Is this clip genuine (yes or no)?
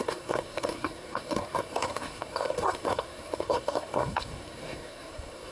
no